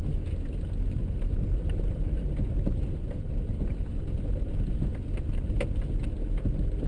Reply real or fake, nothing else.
real